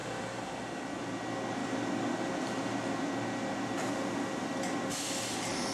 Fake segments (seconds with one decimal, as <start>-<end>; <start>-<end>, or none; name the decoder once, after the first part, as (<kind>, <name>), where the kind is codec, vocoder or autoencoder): none